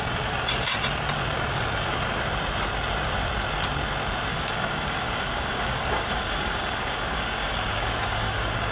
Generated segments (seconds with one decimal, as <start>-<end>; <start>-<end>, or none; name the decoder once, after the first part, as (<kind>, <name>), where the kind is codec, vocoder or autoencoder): 4.3-8.7 (codec, DAC)